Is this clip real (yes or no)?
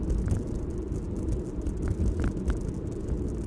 yes